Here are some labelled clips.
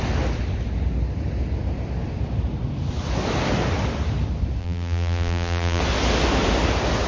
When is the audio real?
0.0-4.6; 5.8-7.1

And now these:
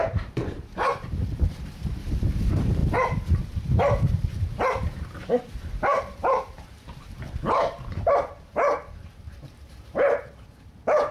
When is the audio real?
2.8-4.3